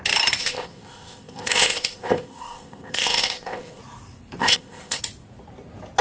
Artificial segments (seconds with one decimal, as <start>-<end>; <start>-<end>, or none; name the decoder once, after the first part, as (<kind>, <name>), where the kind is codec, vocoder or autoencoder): 0.4-3.8 (codec, ZipCodec); 4.4-5.0

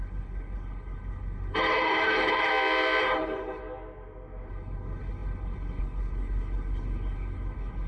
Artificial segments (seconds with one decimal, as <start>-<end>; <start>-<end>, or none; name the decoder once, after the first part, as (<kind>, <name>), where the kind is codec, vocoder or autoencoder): 0.0-2.5 (codec, HILCodec); 3.0-3.6; 4.5-7.9

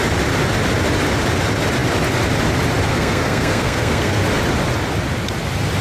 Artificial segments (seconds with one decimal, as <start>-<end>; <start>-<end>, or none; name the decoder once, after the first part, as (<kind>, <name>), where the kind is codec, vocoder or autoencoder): 2.9-4.2 (codec, SNAC)

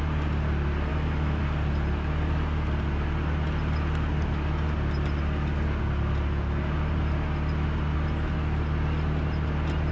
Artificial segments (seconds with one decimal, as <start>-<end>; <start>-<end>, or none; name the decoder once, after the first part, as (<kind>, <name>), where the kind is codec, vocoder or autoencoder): 0.9-1.4 (autoencoder, DAC-VAE)

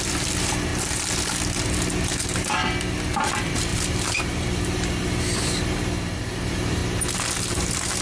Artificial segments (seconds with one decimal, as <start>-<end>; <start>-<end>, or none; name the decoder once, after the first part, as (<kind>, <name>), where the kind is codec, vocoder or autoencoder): 0.0-0.7 (vocoder, BigVGAN v2); 3.3-6.8; 7.5-8.0